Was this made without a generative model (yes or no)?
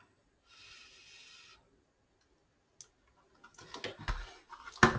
yes